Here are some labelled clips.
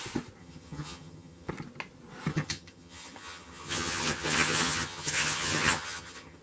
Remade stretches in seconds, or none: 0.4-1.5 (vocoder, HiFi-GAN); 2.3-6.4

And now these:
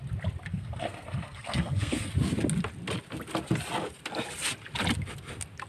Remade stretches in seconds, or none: 0.5-2.1 (codec, SNAC)

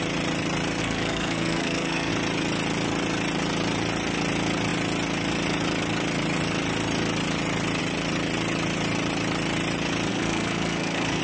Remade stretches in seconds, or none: 0.8-2.1 (codec, SNAC); 10.1-11.2